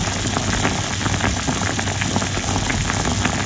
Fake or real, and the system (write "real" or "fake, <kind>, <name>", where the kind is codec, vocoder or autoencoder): real